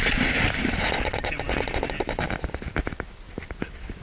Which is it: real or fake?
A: real